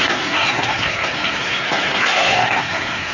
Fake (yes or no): yes